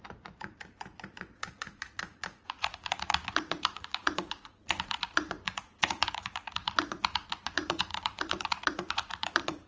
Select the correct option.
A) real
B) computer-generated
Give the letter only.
B